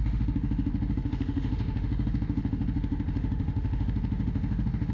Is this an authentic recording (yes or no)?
no